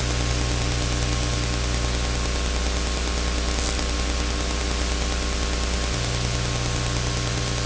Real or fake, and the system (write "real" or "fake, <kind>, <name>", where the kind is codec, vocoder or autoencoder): real